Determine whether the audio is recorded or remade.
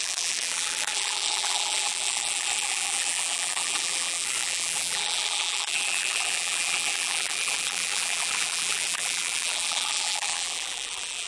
remade